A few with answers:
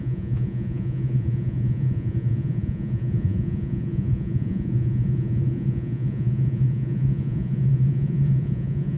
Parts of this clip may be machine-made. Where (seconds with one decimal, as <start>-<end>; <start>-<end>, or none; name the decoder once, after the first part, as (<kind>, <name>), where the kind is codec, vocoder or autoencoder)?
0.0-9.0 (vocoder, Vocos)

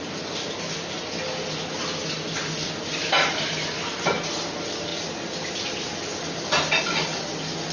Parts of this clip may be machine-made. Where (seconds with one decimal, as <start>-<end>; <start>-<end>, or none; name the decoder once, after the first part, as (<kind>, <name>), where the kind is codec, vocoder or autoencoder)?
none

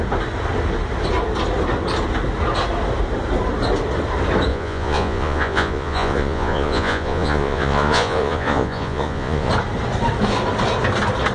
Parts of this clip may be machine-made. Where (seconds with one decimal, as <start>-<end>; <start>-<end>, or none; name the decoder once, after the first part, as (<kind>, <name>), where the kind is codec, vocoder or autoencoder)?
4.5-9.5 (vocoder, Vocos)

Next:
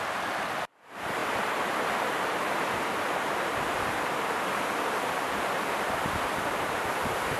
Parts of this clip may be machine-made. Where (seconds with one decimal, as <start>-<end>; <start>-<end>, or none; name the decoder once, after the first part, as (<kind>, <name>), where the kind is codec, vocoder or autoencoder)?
none

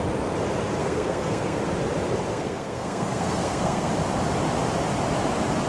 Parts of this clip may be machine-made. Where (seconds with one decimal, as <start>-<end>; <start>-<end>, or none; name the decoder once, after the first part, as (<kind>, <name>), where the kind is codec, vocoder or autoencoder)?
0.8-1.7 (codec, SNAC); 2.3-3.9

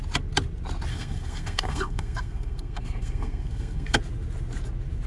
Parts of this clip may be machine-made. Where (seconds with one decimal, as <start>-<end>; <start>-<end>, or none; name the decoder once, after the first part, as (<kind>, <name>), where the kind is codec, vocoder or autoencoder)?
0.9-4.0 (codec, SNAC)

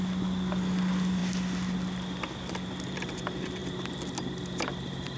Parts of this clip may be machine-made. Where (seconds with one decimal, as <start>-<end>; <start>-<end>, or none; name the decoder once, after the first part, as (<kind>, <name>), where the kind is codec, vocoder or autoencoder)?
none

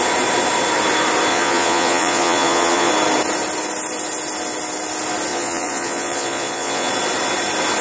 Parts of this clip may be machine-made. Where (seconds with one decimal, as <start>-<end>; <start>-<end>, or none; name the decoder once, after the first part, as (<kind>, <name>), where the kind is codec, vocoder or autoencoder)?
1.3-2.9 (vocoder, Vocos); 5.3-6.9